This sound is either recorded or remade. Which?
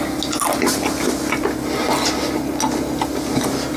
recorded